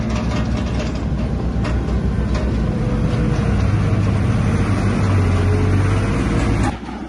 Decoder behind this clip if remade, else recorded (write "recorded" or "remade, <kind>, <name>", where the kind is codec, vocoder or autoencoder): recorded